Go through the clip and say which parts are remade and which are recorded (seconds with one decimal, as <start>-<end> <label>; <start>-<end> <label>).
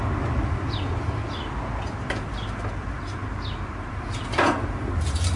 0.0-5.4 recorded